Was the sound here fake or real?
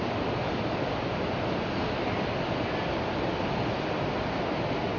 real